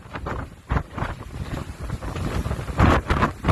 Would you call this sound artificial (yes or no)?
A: no